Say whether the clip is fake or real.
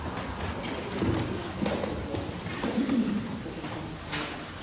real